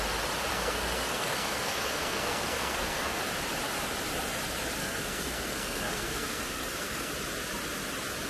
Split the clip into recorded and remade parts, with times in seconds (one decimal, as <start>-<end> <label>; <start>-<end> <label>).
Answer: 0.0-0.5 recorded; 0.5-3.2 remade; 3.2-4.8 recorded; 4.8-7.1 remade; 7.1-8.3 recorded